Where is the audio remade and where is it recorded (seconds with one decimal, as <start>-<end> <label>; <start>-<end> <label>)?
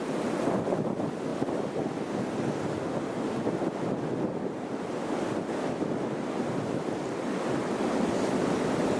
0.0-9.0 recorded